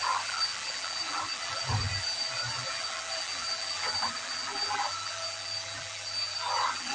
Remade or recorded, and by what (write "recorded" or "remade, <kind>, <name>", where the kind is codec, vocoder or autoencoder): remade, vocoder, BigVGAN v2